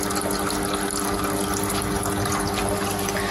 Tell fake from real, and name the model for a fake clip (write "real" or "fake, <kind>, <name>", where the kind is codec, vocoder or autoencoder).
real